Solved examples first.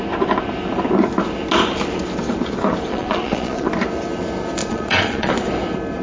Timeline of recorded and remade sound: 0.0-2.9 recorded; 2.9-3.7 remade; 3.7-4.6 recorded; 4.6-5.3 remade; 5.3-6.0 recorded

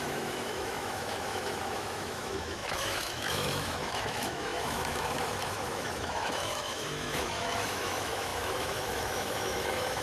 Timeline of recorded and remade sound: 0.0-10.0 remade

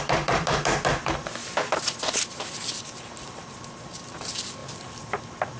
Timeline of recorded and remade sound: 0.0-1.2 remade; 1.2-2.3 recorded; 2.3-4.6 remade; 4.6-5.6 recorded

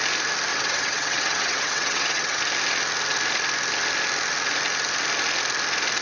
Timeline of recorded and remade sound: 0.0-0.5 recorded; 0.5-2.4 remade; 2.4-6.0 recorded

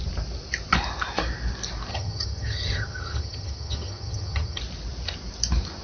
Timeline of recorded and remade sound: 0.0-1.9 recorded; 1.9-4.6 remade; 4.6-5.8 recorded

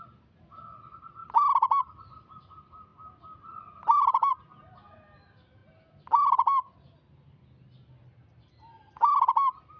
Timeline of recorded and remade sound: 0.0-9.8 recorded

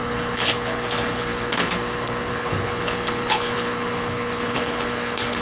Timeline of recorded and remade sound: 0.0-5.4 remade